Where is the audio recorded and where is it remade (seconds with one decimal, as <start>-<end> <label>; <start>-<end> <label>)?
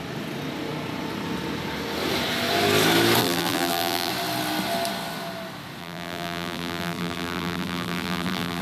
0.0-3.2 recorded; 3.2-4.1 remade; 4.1-5.8 recorded; 5.8-8.6 remade